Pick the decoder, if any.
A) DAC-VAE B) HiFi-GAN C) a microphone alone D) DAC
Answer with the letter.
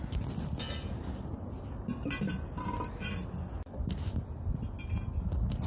C